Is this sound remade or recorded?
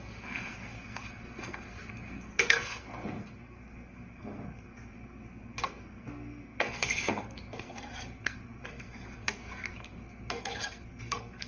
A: remade